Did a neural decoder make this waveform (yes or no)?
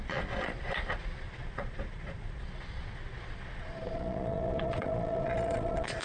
yes